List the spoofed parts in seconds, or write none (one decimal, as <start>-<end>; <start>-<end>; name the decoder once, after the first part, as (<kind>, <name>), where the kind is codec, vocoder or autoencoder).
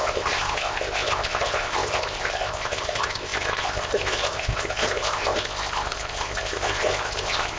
0.0-7.6 (codec, ZipCodec)